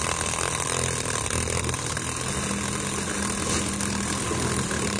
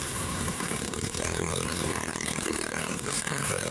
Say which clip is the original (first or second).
first